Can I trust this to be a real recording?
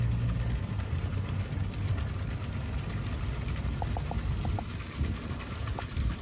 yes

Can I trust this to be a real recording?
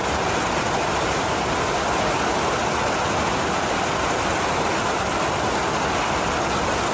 yes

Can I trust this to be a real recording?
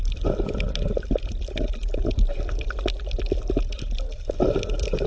yes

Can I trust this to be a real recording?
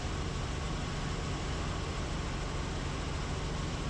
yes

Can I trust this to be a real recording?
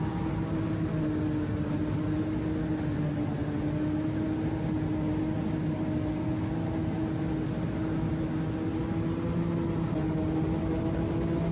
yes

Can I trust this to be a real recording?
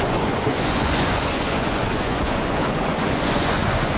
no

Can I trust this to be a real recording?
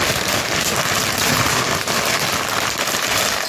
yes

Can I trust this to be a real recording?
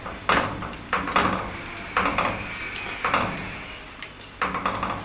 yes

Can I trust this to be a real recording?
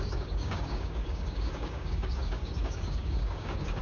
no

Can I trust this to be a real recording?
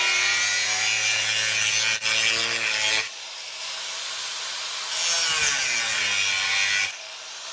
yes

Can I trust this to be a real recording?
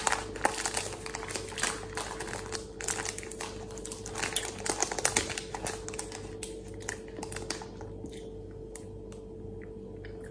yes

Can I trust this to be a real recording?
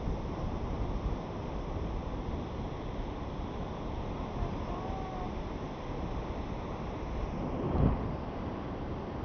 yes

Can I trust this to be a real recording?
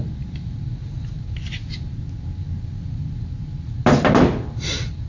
yes